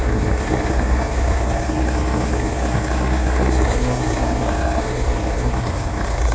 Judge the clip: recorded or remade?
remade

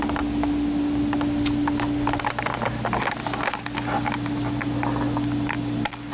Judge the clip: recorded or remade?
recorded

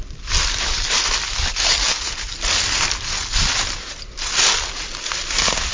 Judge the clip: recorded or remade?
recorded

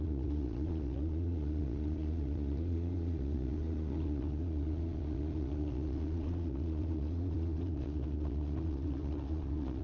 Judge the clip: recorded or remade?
remade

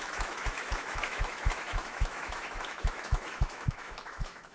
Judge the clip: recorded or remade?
remade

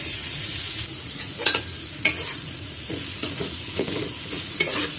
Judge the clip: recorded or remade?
remade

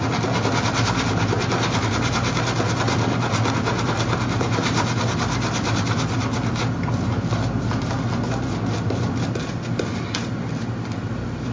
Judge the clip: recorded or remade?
recorded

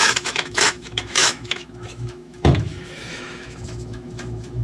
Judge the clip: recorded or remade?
remade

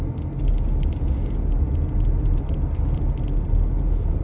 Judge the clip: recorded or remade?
recorded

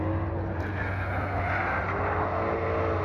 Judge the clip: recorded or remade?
recorded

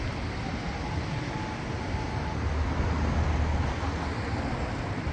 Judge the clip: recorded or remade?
recorded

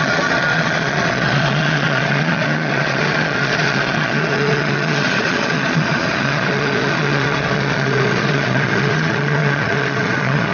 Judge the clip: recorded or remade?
remade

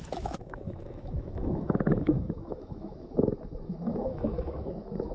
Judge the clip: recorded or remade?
remade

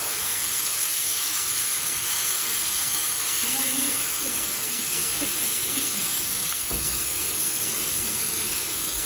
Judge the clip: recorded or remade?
remade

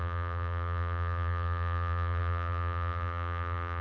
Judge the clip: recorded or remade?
remade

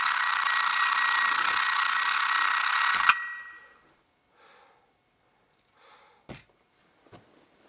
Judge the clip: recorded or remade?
recorded